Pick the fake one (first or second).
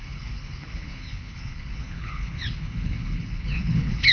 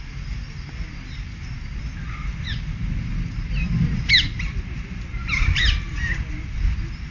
first